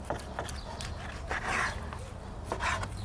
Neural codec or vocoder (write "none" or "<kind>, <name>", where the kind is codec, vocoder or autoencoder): none